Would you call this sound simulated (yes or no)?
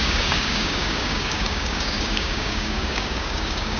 yes